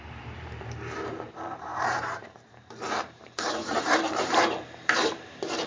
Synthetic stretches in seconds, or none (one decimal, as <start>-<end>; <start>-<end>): 0.0-5.7